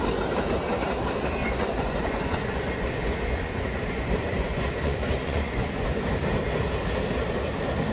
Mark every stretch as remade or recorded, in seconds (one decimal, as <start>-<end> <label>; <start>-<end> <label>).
0.0-1.4 recorded; 1.4-6.1 remade; 6.1-7.9 recorded

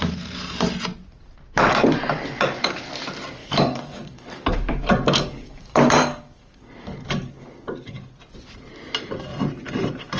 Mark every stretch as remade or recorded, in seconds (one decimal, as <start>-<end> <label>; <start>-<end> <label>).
0.0-3.4 recorded; 3.4-8.1 remade; 8.1-10.2 recorded

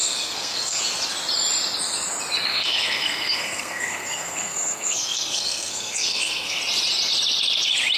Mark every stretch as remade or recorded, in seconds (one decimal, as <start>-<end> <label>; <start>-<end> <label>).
0.0-0.8 remade; 0.8-2.5 recorded; 2.5-6.6 remade; 6.6-8.0 recorded

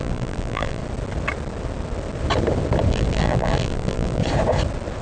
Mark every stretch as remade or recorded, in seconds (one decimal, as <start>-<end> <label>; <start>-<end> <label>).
0.0-0.8 remade; 0.8-2.9 recorded; 2.9-4.2 remade; 4.2-5.0 recorded

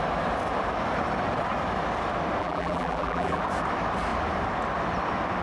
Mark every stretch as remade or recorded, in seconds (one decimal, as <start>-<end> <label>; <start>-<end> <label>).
0.0-2.4 recorded; 2.4-3.4 remade; 3.4-5.4 recorded

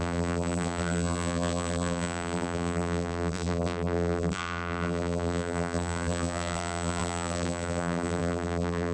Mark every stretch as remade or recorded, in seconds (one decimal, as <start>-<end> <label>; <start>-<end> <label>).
0.0-8.9 remade